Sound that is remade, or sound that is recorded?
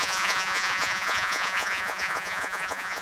remade